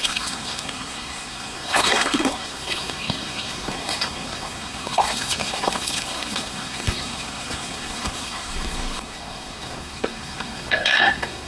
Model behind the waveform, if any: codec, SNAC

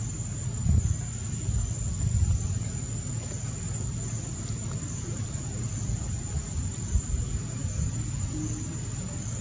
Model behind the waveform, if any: none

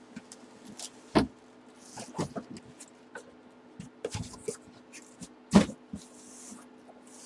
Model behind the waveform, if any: none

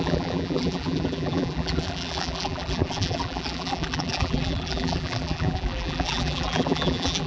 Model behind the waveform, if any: vocoder, BigVGAN v2